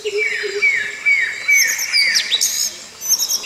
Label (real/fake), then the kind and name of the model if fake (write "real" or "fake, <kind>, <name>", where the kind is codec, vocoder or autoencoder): real